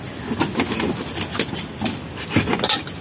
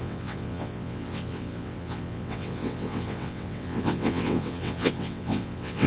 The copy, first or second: second